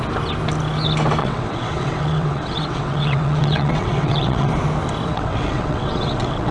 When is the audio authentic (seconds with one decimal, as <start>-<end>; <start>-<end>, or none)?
0.0-1.2; 4.5-5.1

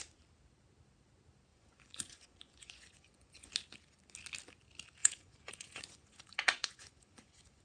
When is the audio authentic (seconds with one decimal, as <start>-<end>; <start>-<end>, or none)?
0.0-1.5; 3.5-5.0